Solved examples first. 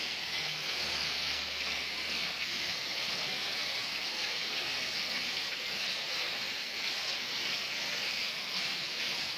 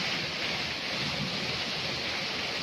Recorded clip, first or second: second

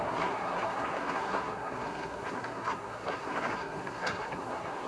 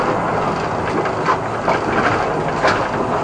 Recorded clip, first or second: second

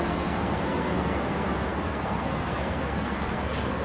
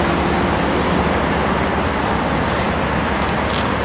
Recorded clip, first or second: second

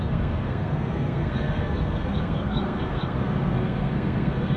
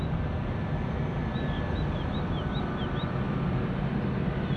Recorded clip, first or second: second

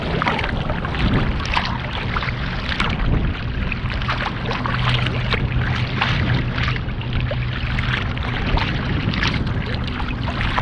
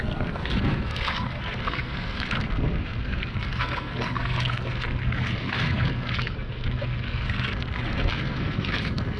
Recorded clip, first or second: first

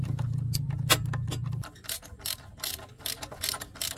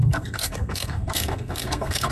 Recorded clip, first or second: first